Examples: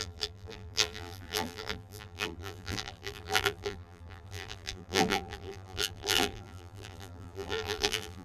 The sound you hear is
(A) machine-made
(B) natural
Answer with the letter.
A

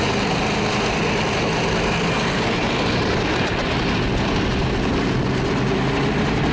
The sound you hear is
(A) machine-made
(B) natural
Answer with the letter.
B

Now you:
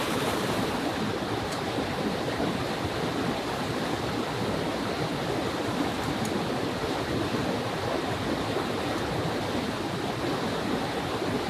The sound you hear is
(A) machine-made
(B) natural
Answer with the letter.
B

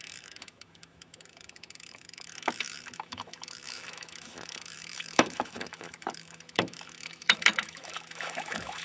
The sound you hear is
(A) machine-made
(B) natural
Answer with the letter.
A